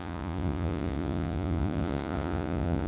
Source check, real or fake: fake